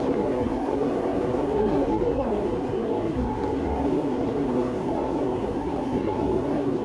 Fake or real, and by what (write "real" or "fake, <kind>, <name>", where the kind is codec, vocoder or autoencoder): fake, codec, SNAC